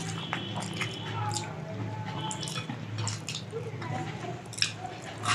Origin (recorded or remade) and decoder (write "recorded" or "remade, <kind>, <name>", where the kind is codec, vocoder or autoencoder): recorded